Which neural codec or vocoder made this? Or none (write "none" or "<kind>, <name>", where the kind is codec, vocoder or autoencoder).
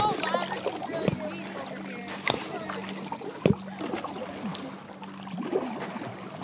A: none